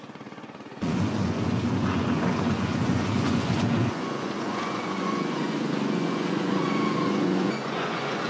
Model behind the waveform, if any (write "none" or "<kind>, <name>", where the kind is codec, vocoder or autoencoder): vocoder, Vocos